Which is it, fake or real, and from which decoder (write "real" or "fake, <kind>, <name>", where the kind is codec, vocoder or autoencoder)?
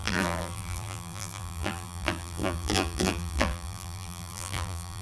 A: fake, vocoder, BigVGAN v2